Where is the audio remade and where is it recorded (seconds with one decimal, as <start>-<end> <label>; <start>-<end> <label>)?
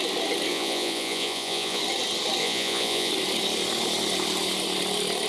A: 0.0-0.5 recorded; 0.5-1.8 remade; 1.8-2.4 recorded; 2.4-3.1 remade; 3.1-5.3 recorded